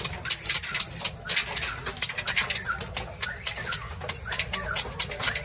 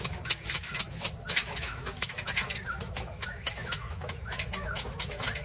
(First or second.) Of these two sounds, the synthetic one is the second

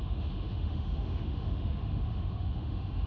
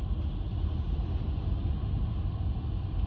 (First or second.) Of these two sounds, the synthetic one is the first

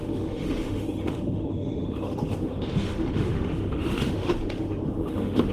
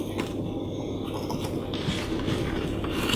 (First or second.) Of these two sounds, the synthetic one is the first